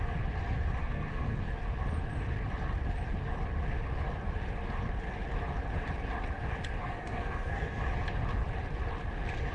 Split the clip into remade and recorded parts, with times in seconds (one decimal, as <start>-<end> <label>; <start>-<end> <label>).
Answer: 0.0-0.8 recorded; 0.8-1.4 remade; 1.4-6.8 recorded; 6.8-7.8 remade; 7.8-9.5 recorded